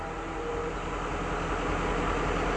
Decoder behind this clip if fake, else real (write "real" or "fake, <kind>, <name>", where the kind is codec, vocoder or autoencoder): real